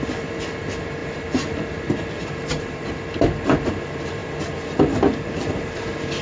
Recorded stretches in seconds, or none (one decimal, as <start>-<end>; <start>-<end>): 0.0-6.2